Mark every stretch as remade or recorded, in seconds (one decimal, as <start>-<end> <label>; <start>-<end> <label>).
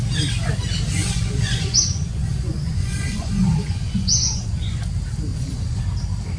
0.0-1.0 recorded; 1.0-4.8 remade; 4.8-5.3 recorded; 5.3-5.8 remade; 5.8-6.4 recorded